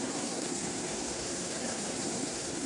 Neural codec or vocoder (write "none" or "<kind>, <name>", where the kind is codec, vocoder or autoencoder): codec, SNAC